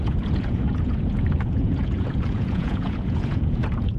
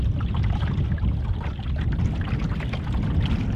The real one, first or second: second